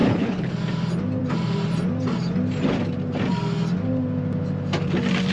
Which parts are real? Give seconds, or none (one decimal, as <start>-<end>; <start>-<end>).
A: 0.5-5.3